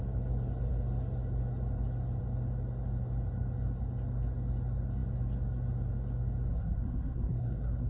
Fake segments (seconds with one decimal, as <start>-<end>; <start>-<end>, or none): 6.5-7.9